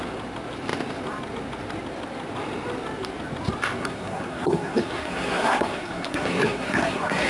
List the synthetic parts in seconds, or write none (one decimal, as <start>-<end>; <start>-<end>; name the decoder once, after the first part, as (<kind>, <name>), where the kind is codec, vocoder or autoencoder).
3.8-7.3 (codec, SNAC)